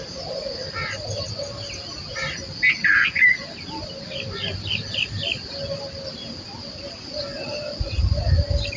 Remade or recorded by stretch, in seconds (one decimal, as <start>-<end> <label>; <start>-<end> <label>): 0.0-8.8 recorded